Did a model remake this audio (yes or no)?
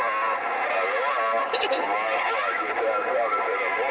no